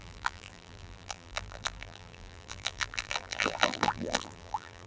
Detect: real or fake fake